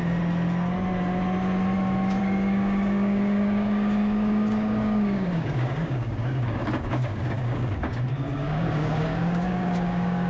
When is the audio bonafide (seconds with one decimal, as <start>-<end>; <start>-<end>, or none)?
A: 0.0-2.2